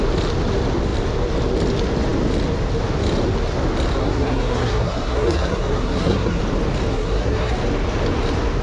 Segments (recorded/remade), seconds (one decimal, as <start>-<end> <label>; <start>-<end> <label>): 0.0-4.0 recorded; 4.0-6.4 remade; 6.4-6.9 recorded; 6.9-7.5 remade; 7.5-8.6 recorded